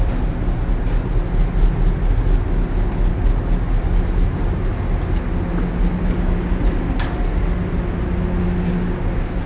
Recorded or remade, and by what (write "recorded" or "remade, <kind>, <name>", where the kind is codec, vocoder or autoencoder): recorded